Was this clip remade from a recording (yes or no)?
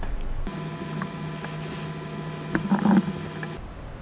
no